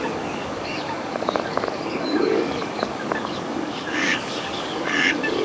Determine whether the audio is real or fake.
fake